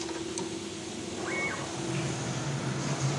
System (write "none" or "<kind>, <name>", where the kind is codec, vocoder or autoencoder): none